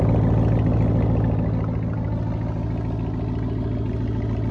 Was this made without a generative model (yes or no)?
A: yes